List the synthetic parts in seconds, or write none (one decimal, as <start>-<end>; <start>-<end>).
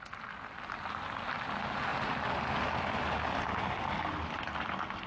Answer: none